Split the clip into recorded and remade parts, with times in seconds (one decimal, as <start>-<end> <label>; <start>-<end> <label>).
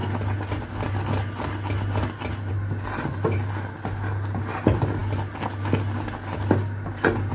0.0-7.3 recorded